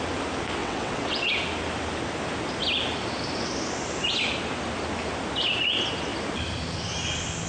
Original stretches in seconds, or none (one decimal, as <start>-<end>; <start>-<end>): 0.0-0.6; 1.3-7.5